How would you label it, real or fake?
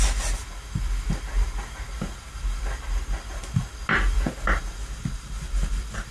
real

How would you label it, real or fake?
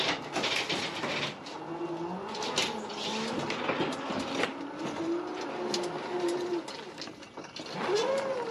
real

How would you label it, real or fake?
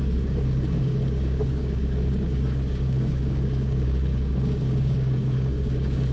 fake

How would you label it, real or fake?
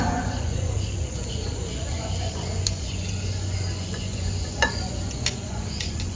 fake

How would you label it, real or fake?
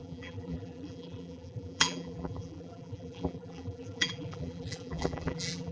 fake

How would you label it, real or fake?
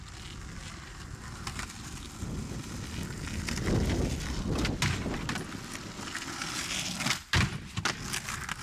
real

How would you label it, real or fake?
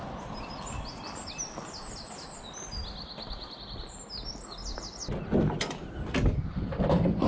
real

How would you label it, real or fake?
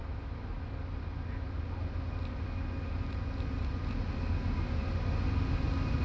real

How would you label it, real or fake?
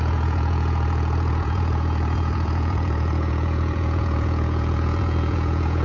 fake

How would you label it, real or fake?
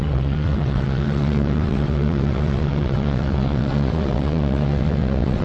fake